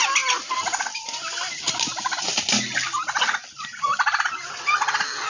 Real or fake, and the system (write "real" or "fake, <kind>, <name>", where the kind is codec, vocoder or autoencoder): real